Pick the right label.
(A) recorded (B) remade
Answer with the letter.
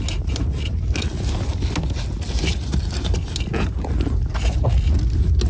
A